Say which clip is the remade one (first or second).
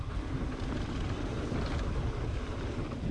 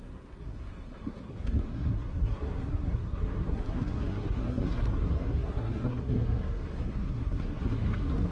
second